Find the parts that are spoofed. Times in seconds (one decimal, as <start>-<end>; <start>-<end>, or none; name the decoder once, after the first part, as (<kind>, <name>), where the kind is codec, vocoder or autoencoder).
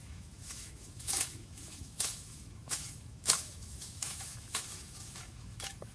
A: 0.0-5.9 (autoencoder, DAC-VAE)